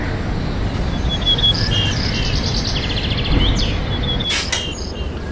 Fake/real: real